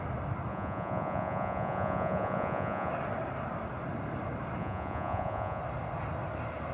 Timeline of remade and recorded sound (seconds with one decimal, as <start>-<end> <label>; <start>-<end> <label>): 0.0-0.5 recorded; 0.5-2.9 remade; 2.9-4.6 recorded; 4.6-5.6 remade; 5.6-6.7 recorded

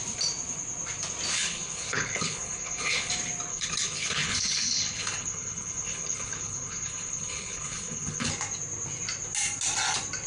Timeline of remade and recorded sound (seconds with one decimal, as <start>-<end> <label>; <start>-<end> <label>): 0.0-1.3 recorded; 1.3-3.1 remade; 3.1-3.5 recorded; 3.5-8.3 remade; 8.3-10.3 recorded

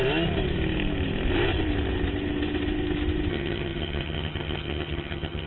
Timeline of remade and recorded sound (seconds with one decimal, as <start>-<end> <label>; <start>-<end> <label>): 0.0-3.3 recorded; 3.3-5.5 remade